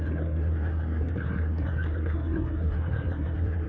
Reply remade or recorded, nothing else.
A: remade